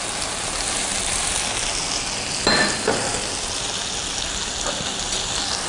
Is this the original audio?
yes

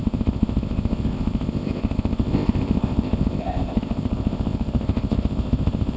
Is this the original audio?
no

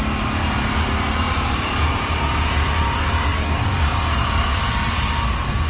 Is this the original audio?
yes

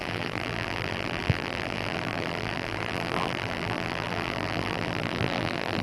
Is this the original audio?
no